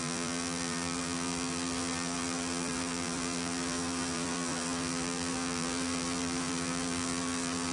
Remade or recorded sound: remade